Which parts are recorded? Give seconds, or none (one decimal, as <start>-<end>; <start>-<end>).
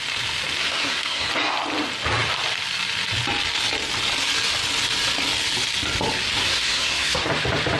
0.0-0.6; 1.3-6.4; 7.3-7.8